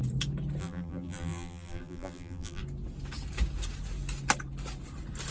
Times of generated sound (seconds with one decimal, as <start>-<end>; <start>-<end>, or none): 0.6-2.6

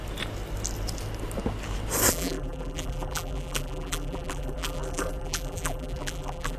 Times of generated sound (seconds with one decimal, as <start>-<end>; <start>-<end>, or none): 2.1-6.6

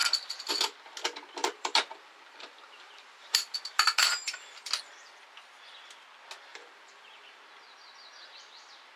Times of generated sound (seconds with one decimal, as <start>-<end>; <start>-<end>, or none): 0.0-0.5; 1.4-4.4; 6.5-7.4

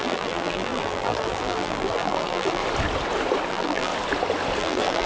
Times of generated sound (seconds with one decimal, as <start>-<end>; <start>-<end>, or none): 0.0-2.6; 3.5-3.9; 4.6-5.1

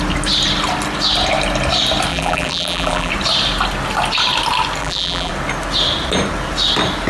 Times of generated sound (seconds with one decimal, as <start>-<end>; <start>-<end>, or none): 2.1-3.1; 4.8-5.3